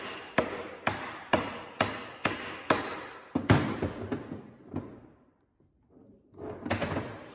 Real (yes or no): yes